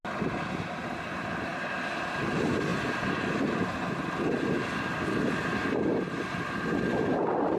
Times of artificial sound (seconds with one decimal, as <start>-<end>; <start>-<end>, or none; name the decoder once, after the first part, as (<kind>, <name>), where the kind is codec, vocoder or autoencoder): none